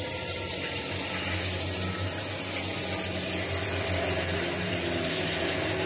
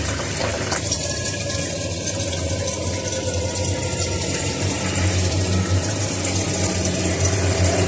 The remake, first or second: second